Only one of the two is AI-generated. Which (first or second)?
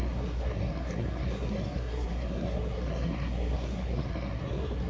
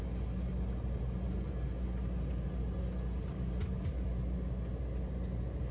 first